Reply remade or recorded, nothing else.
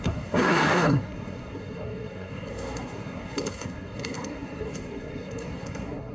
remade